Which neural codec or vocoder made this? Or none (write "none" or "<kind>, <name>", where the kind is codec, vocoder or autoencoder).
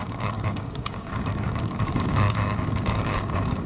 codec, DAC